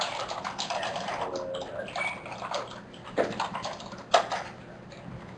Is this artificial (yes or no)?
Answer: no